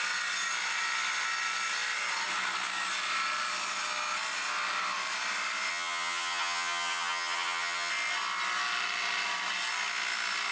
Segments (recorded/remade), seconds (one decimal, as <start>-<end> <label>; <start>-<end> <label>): 0.0-5.7 recorded; 5.7-7.9 remade; 7.9-10.5 recorded